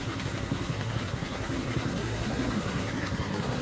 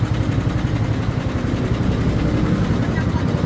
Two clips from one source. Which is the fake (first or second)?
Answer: first